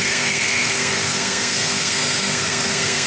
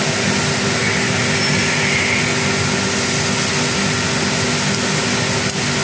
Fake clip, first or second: first